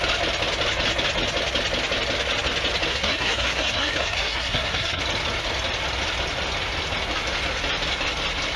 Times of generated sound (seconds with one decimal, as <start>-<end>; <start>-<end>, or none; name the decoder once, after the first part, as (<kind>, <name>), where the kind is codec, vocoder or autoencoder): 2.9-5.0 (codec, SNAC)